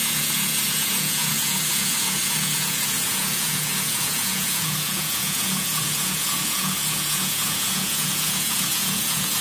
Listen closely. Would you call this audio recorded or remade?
remade